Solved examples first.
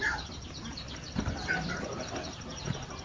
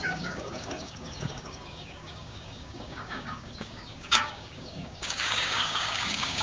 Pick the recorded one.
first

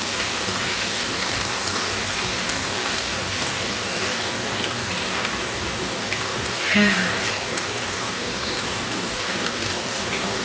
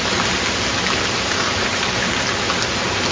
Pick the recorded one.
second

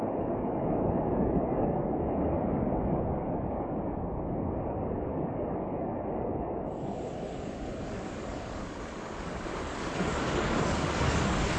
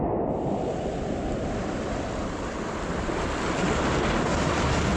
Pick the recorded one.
second